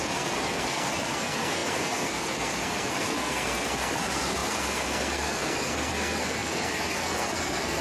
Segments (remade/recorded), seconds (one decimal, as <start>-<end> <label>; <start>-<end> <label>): 0.0-7.8 remade